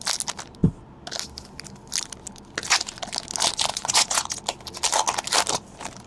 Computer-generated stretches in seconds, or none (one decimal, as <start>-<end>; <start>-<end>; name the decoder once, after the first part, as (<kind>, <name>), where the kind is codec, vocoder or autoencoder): 3.7-4.4 (vocoder, Vocos)